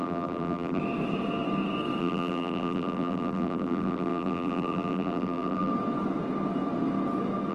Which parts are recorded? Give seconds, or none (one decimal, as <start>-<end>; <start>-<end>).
0.8-2.0; 5.7-7.5